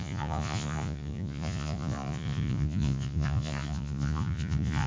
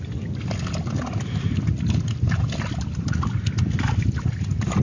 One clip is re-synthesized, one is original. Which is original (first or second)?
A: second